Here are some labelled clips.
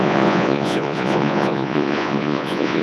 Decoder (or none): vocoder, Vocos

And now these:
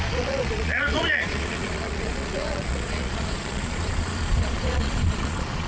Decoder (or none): vocoder, Vocos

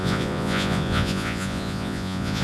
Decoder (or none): vocoder, Vocos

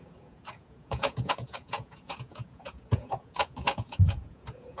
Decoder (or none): vocoder, Vocos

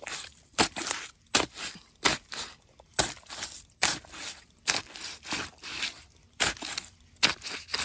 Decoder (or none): none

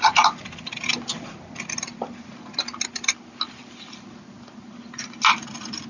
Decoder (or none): none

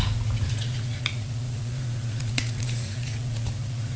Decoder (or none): vocoder, Vocos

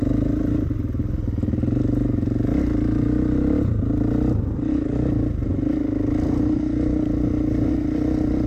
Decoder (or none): none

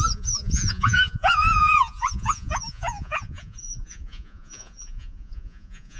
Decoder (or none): vocoder, Vocos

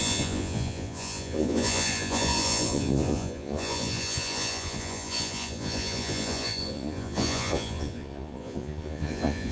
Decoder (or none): vocoder, Vocos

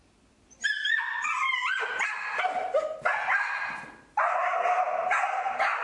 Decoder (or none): none